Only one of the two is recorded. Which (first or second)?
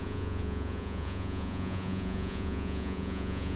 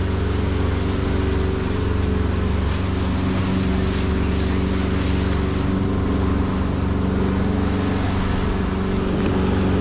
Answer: second